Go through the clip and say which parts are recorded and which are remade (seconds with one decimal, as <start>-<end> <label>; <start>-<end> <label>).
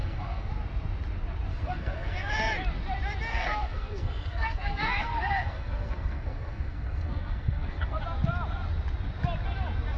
0.0-0.5 remade; 0.5-1.5 recorded; 1.5-2.3 remade; 2.3-3.3 recorded; 3.3-8.0 remade; 8.0-10.0 recorded